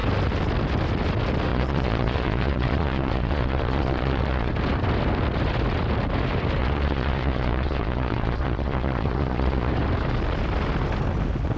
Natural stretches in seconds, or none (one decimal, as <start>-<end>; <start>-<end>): 0.0-1.5; 4.5-6.6; 9.7-11.6